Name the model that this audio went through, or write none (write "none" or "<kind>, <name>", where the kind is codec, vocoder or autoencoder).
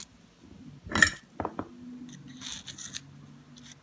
none